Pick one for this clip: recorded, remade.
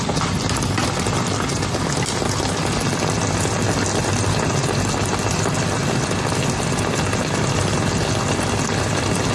recorded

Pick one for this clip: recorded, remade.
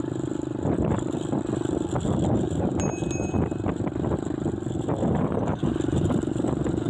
recorded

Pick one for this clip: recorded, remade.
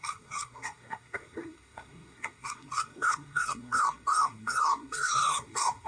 remade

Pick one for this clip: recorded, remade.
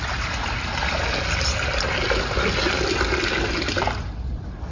recorded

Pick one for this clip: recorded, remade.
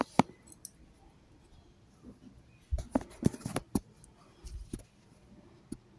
recorded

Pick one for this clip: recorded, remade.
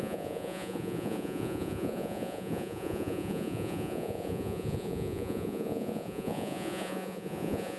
remade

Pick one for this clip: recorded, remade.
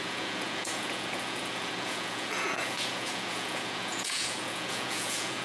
remade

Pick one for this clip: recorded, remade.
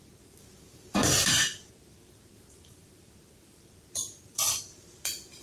remade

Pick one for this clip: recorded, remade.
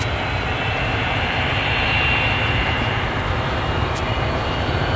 remade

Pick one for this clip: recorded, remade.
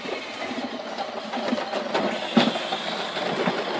recorded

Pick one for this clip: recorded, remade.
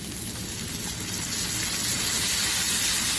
recorded